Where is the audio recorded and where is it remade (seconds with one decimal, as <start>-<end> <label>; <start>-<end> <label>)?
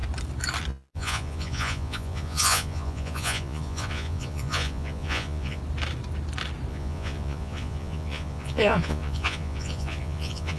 0.0-0.9 recorded; 0.9-5.6 remade; 5.6-6.7 recorded; 6.7-10.6 remade